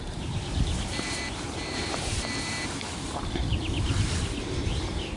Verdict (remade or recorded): remade